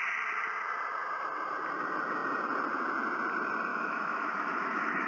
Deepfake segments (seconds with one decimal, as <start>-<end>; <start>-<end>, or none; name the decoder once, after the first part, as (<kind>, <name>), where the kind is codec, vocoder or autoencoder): 3.7-5.1 (autoencoder, DAC-VAE)